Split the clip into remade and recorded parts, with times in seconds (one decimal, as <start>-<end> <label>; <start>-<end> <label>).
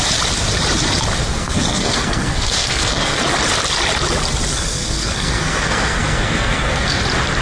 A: 0.0-1.3 recorded; 1.3-3.2 remade; 3.2-4.5 recorded; 4.5-7.0 remade; 7.0-7.4 recorded